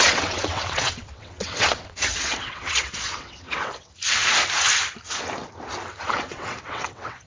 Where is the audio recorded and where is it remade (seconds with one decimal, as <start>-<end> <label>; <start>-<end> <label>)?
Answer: 0.0-4.0 remade; 4.0-6.0 recorded; 6.0-7.3 remade